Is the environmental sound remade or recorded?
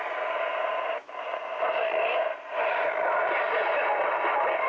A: recorded